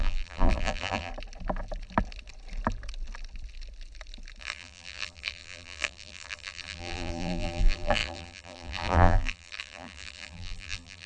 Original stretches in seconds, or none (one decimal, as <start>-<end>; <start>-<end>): 1.1-4.4